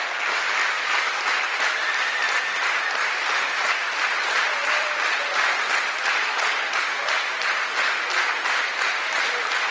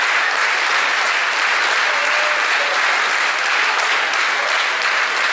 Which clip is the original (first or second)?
second